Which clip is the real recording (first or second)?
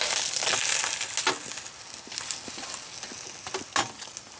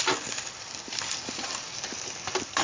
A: first